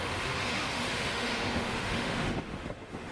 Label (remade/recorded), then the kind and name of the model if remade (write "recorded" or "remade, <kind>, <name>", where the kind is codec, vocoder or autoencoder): remade, autoencoder, DAC-VAE